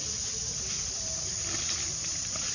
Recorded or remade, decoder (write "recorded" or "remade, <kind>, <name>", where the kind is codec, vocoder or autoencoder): recorded